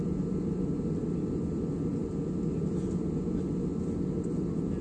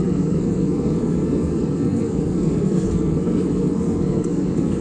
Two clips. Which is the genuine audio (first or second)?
first